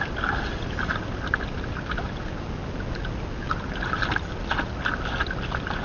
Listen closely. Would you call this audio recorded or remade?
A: recorded